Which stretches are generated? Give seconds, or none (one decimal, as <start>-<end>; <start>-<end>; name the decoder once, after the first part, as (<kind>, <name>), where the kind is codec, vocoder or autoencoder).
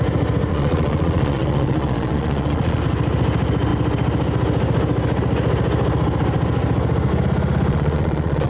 0.5-2.8 (vocoder, Vocos); 7.7-8.5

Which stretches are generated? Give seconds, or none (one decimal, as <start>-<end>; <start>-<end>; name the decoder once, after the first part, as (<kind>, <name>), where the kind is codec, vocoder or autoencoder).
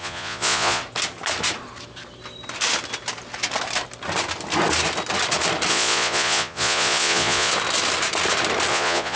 0.0-0.8 (vocoder, Vocos); 5.7-7.5; 8.7-9.2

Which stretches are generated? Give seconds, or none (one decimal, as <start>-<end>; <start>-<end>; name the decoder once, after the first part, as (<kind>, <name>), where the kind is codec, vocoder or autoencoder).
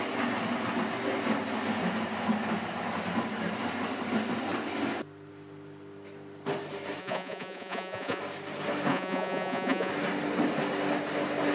7.0-8.2 (vocoder, Vocos); 8.9-9.9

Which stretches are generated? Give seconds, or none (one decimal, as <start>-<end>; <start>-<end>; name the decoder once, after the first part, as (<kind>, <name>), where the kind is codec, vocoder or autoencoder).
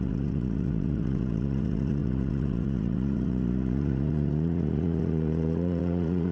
0.0-6.3 (vocoder, Vocos)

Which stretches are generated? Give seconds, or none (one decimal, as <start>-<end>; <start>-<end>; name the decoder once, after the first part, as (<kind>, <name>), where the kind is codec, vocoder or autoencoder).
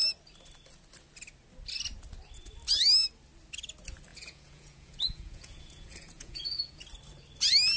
4.1-6.8 (vocoder, Vocos)